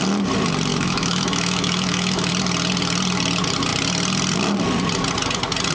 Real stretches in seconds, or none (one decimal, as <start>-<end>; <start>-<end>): 0.0-0.7; 2.3-5.7